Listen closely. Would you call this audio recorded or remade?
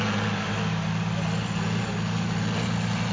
recorded